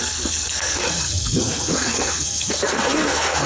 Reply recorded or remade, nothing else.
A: remade